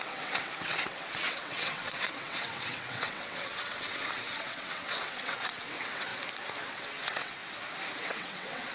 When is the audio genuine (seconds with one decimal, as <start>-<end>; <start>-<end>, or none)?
6.1-6.7; 7.4-8.0